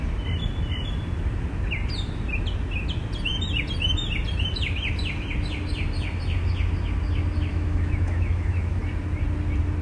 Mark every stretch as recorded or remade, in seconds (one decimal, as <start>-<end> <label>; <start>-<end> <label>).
0.0-7.5 recorded; 7.5-8.8 remade; 8.8-9.8 recorded